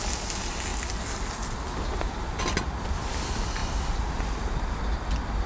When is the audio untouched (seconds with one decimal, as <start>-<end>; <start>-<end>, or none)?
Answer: 0.0-5.5

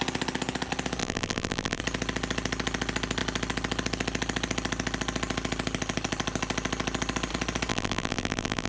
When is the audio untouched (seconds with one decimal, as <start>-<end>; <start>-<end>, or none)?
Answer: 0.0-1.0; 1.8-7.7

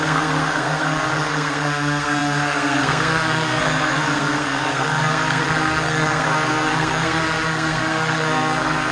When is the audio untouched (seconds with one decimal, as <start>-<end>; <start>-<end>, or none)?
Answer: none